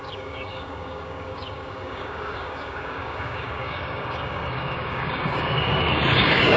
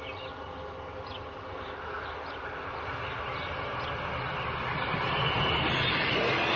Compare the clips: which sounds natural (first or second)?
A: second